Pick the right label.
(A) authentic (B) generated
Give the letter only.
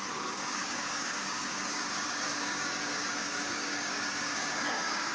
B